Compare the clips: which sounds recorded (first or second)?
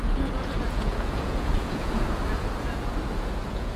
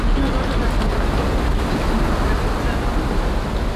second